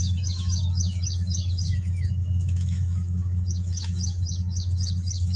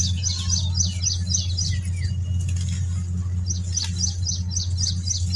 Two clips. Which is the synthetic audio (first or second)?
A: first